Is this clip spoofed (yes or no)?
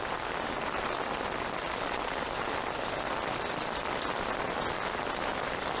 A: no